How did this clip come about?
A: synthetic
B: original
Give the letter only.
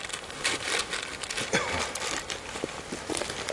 A